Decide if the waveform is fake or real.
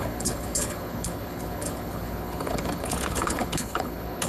fake